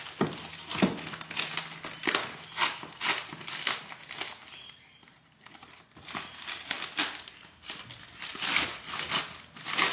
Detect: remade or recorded recorded